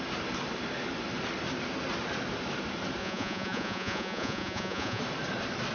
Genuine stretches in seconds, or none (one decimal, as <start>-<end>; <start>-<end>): 0.0-3.0; 5.0-5.7

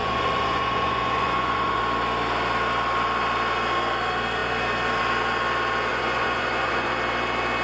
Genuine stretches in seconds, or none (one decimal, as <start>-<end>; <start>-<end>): 1.8-5.9; 6.9-7.6

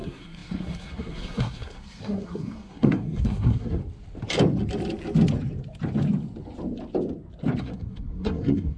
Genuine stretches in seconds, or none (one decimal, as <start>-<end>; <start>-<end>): 3.8-7.6

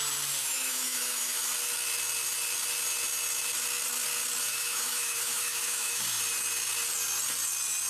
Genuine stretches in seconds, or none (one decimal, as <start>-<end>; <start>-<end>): 0.0-0.4; 1.4-4.5; 6.0-7.9

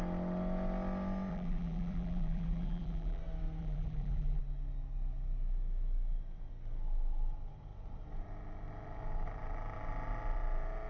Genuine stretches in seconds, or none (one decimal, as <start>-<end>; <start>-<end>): 0.0-1.3; 3.2-3.6; 4.4-10.9

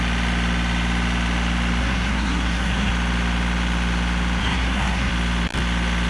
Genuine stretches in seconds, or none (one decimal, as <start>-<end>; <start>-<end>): 0.0-1.8; 2.9-4.4; 5.1-6.1

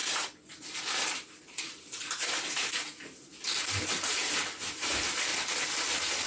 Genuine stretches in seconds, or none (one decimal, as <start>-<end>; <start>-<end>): 5.3-6.3

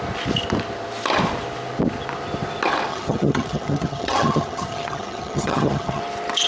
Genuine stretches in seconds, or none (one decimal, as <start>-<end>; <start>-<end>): 0.0-2.9; 6.0-6.5